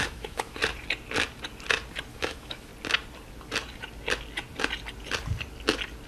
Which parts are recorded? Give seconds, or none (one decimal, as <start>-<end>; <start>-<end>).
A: 0.6-2.1; 2.7-6.1